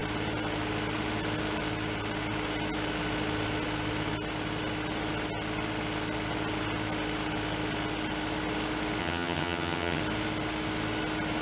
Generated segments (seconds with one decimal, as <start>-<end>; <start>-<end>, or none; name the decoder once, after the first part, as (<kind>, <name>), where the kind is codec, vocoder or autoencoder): 9.0-10.0 (vocoder, HiFi-GAN)